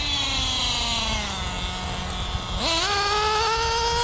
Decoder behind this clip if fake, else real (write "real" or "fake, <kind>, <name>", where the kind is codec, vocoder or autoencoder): real